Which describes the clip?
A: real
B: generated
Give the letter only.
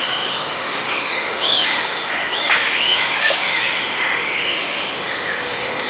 B